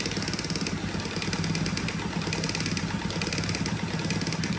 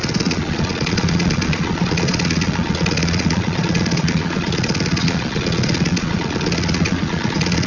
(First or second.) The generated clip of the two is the second